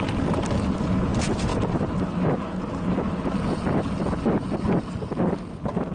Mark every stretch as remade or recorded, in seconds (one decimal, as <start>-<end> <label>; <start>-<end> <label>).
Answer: 0.0-5.9 recorded